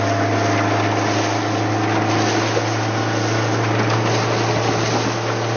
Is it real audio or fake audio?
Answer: real